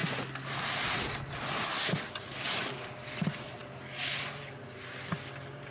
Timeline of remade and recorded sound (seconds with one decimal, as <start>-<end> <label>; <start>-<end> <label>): 0.0-5.7 recorded